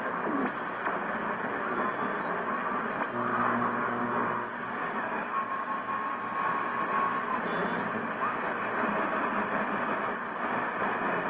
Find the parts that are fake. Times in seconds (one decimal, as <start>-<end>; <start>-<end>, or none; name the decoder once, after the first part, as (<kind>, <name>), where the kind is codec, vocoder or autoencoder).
3.3-6.0 (codec, DAC)